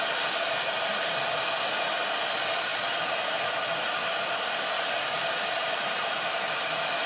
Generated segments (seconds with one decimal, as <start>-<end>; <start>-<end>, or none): none